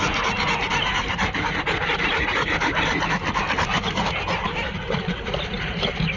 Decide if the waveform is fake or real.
real